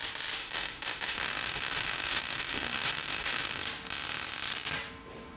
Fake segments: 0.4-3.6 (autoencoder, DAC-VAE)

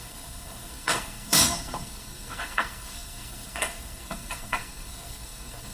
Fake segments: 0.0-5.7 (codec, SNAC)

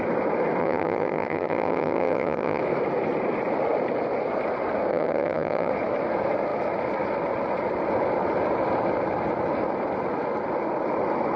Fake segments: 0.6-2.6 (vocoder, HiFi-GAN); 4.9-5.7

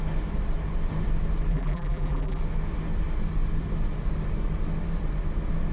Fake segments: 1.5-2.4 (vocoder, BigVGAN v2)